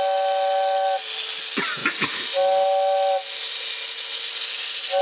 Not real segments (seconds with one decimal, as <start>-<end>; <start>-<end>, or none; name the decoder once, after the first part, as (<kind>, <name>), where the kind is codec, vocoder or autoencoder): none